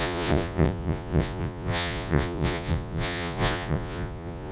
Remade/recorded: remade